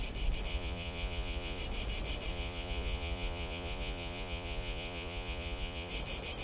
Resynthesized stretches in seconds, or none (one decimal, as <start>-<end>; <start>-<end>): 0.5-1.6; 2.3-5.9